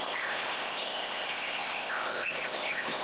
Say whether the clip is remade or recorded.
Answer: remade